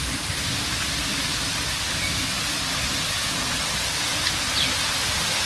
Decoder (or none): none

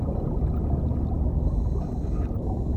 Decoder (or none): none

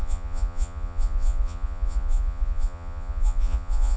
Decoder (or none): vocoder, Vocos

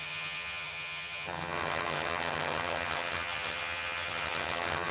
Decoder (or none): vocoder, HiFi-GAN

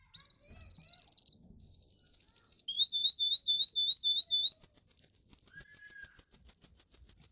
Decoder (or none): none